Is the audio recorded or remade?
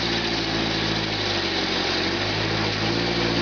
recorded